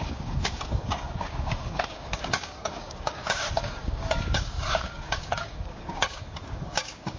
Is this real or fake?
fake